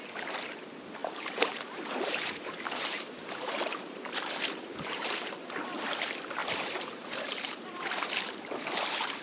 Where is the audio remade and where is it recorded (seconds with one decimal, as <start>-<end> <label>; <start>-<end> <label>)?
0.0-1.0 recorded; 1.0-5.4 remade; 5.4-6.4 recorded; 6.4-7.8 remade; 7.8-9.2 recorded

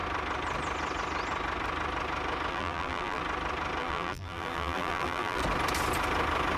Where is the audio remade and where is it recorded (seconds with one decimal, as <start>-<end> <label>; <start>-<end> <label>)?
0.0-2.5 recorded; 2.5-3.2 remade; 3.2-3.8 recorded; 3.8-5.4 remade; 5.4-6.6 recorded

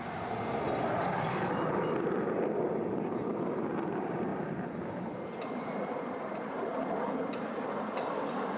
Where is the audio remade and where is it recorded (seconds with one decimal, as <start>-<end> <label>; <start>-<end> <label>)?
0.0-6.7 remade; 6.7-7.3 recorded; 7.3-8.6 remade